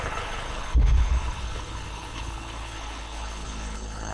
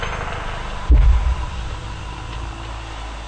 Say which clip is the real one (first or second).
second